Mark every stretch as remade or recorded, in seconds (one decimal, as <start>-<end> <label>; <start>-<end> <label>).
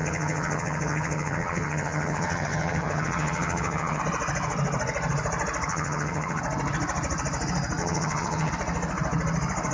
0.0-4.0 remade; 4.0-5.7 recorded; 5.7-6.4 remade; 6.4-7.8 recorded; 7.8-8.5 remade; 8.5-9.7 recorded